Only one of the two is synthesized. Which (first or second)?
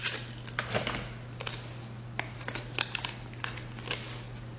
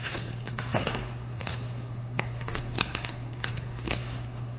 second